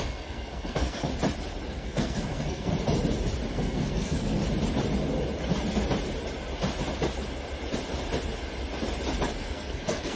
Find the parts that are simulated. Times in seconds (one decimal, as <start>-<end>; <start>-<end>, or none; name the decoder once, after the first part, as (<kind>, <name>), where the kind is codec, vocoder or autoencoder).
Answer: 0.0-1.1 (codec, SNAC); 1.7-2.7; 3.5-4.4; 9.4-10.2